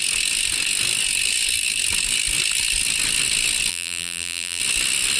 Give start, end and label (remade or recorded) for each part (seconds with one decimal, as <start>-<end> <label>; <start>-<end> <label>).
0.0-3.7 recorded; 3.7-4.6 remade; 4.6-5.2 recorded